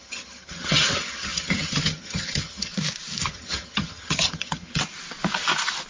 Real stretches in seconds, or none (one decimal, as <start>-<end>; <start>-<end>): 2.7-3.3; 4.8-5.9